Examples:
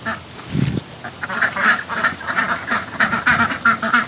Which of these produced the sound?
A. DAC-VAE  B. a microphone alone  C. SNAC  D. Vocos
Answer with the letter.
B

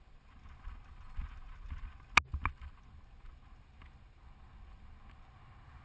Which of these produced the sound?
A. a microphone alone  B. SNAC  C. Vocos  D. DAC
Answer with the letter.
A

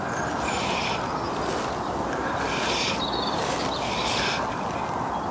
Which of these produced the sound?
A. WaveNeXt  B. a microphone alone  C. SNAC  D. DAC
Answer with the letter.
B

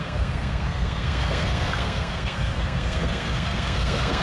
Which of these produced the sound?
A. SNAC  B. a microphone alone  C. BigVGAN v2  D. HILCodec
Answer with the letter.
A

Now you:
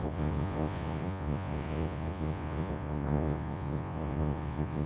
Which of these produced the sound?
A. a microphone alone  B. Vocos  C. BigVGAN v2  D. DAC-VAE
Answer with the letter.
B